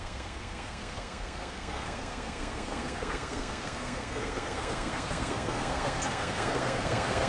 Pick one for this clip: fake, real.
fake